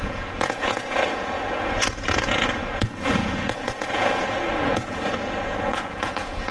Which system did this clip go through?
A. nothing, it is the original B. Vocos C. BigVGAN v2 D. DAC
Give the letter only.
B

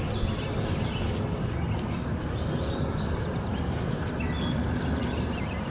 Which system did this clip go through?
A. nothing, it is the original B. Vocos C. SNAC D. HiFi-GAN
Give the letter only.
A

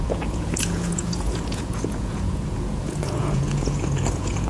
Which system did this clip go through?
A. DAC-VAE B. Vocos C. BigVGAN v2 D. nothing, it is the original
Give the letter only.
B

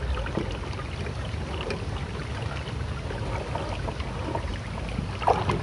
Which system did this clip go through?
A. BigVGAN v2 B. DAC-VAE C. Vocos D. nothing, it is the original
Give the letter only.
D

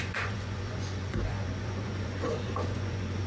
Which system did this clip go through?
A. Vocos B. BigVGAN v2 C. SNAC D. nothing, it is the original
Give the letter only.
A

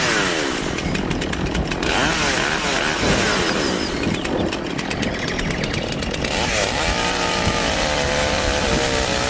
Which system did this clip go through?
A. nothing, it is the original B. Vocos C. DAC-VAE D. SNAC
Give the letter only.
A